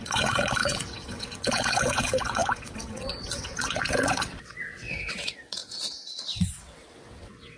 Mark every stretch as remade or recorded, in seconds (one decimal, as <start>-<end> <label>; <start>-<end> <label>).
0.0-7.6 remade